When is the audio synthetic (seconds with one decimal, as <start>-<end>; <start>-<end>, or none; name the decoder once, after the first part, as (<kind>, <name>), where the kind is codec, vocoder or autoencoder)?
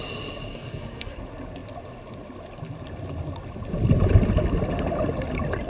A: 0.5-1.2 (codec, SNAC)